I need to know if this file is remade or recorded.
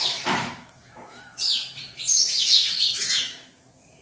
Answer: remade